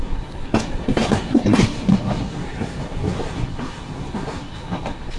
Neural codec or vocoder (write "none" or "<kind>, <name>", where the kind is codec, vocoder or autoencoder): codec, SNAC